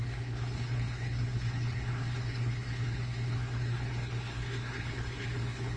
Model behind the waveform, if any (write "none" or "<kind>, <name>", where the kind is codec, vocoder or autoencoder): codec, HILCodec